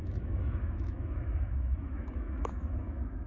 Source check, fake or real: fake